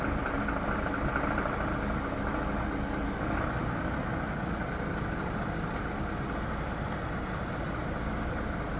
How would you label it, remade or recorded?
recorded